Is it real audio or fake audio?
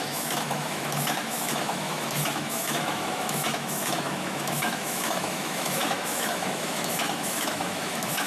fake